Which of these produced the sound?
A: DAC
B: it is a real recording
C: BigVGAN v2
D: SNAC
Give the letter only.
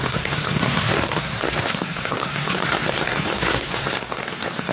D